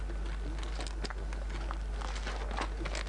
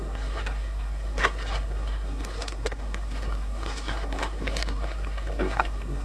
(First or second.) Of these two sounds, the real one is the first